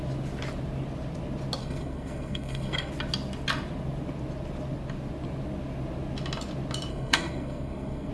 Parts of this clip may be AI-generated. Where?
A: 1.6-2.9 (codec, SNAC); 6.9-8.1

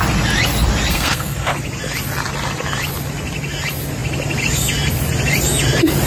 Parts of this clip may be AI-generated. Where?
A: 0.9-1.5 (codec, SNAC)

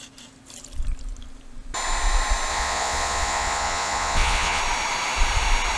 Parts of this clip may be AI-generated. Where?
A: 2.5-4.6 (vocoder, Vocos)

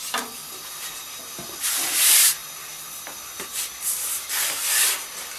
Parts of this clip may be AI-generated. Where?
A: none

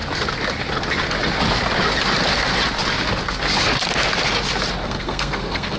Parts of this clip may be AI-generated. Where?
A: 4.8-5.8 (codec, SNAC)